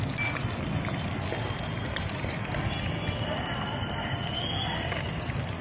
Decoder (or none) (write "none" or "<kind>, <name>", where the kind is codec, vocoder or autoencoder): none